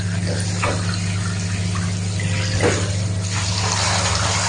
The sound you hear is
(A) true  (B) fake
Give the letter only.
A